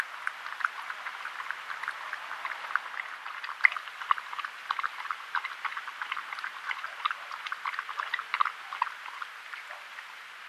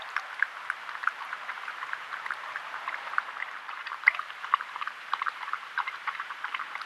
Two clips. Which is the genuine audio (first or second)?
first